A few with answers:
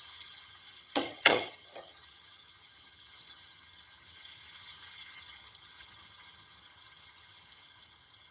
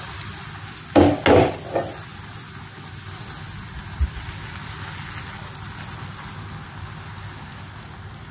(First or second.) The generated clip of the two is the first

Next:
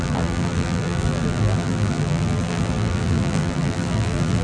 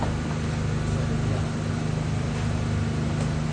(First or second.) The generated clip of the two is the first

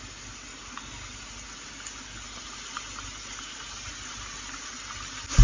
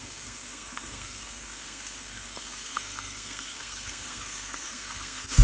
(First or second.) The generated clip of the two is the second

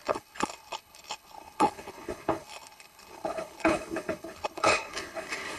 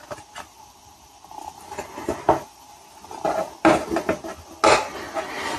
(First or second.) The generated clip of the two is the first